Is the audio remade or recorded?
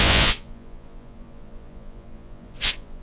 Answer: remade